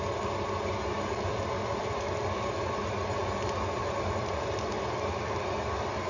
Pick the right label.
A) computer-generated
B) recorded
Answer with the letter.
B